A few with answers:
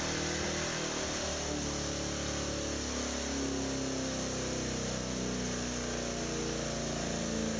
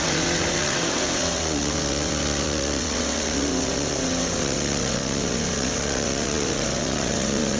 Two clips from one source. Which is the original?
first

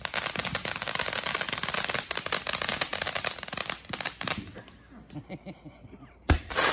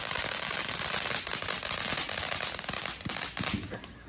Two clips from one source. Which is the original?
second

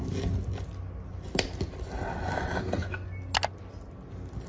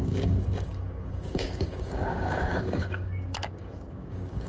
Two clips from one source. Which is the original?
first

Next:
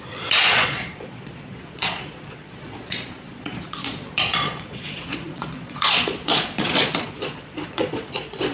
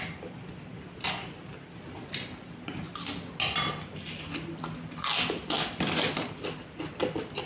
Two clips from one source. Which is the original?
second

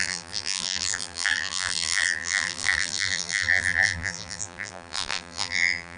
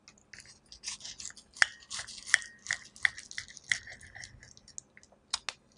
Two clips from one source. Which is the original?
second